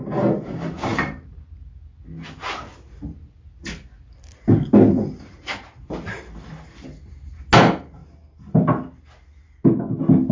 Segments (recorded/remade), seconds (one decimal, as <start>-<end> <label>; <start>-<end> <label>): 0.0-0.9 recorded; 0.9-1.5 remade; 1.5-10.3 recorded

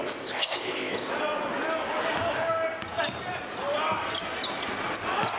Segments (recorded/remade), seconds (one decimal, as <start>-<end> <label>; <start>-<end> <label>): 0.0-1.1 remade; 1.1-5.4 recorded

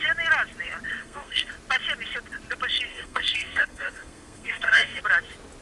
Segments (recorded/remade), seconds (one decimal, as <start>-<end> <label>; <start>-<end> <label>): 0.0-1.0 recorded; 1.0-1.5 remade; 1.5-2.9 recorded; 2.9-5.0 remade; 5.0-5.6 recorded

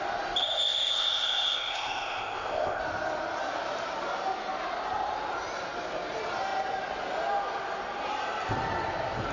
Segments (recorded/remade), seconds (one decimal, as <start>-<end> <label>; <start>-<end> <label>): 0.0-0.4 recorded; 0.4-2.8 remade; 2.8-9.3 recorded

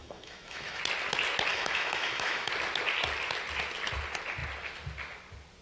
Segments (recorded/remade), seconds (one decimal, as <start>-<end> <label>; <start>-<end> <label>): 0.0-0.8 remade; 0.8-1.5 recorded; 1.5-2.5 remade; 2.5-5.6 recorded